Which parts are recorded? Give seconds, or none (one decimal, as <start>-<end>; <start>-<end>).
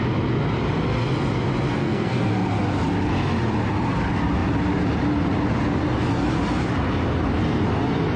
0.0-1.7; 2.3-8.2